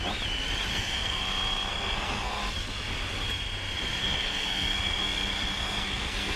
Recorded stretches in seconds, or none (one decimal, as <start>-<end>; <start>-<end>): 0.0-0.7; 1.2-1.7; 2.4-4.0